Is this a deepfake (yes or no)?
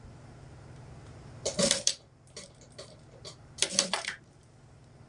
yes